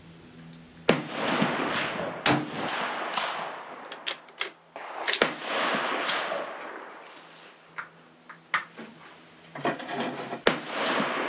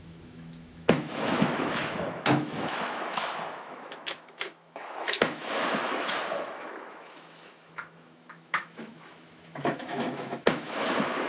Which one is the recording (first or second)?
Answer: first